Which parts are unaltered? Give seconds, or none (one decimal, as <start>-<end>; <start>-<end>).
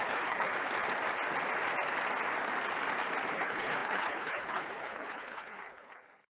0.5-3.3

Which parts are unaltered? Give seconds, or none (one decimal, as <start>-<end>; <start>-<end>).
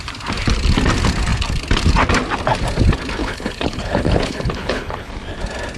0.0-3.2; 5.1-5.8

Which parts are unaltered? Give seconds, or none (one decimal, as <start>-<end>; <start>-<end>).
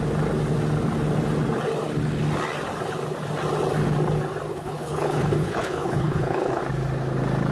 0.0-4.5; 6.6-7.5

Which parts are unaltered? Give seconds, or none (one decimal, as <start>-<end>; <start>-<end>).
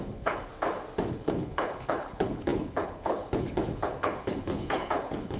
0.5-1.1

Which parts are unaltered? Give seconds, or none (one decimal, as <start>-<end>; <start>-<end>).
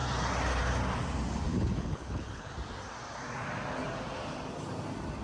0.0-1.5; 2.5-5.2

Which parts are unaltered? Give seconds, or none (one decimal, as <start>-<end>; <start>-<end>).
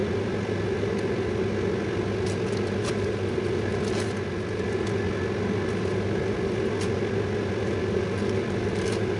0.0-9.2